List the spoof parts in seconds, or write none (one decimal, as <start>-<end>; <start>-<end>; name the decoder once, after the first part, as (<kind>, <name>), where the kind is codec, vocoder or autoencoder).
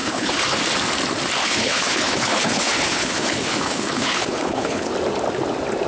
0.0-0.6 (codec, HILCodec); 1.4-4.9